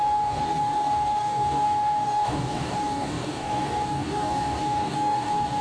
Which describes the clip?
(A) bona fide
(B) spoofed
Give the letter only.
B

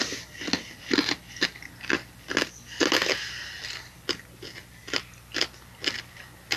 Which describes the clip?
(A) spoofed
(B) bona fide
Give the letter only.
B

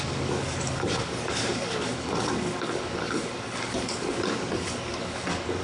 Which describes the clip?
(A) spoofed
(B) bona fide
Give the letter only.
A